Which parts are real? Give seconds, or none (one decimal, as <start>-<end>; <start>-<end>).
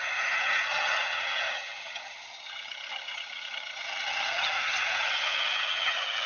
none